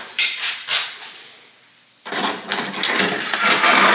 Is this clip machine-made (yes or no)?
no